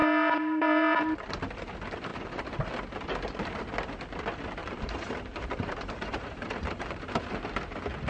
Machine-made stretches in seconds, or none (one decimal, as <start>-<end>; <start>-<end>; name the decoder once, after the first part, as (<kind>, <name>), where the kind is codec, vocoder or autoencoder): 0.0-1.4 (vocoder, BigVGAN v2); 2.1-2.7; 4.6-7.2